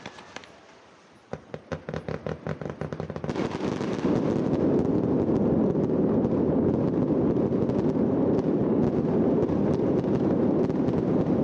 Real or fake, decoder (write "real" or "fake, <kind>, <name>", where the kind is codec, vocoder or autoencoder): real